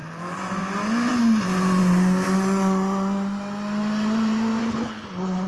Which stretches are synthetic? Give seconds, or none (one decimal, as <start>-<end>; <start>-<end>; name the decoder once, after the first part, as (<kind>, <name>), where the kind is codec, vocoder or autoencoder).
4.6-5.5 (codec, HILCodec)